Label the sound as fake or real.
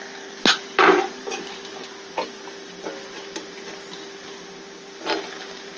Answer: real